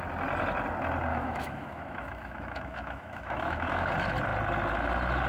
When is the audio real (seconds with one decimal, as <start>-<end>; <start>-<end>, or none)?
0.0-1.1; 3.9-5.3